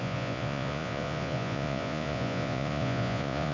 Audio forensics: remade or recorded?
remade